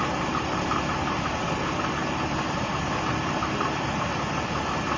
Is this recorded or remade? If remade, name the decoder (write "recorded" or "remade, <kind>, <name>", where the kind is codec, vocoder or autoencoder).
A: recorded